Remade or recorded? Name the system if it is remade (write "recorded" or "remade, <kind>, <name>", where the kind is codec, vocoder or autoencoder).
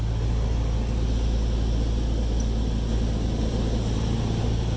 recorded